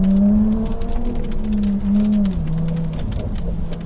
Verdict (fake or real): real